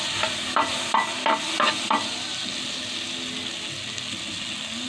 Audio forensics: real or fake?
real